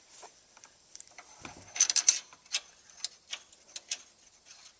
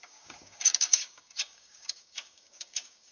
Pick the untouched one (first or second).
first